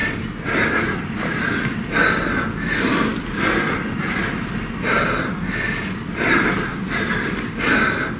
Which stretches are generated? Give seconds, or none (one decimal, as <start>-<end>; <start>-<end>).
3.1-4.6; 6.7-7.6